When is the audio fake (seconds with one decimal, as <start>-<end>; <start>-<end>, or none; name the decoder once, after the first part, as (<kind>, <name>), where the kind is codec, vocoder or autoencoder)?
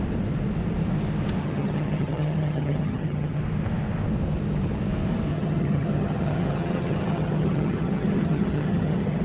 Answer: 1.4-3.4 (vocoder, HiFi-GAN); 5.3-9.2